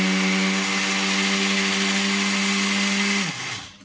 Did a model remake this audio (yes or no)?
no